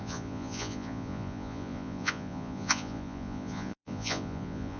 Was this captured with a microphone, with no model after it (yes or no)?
no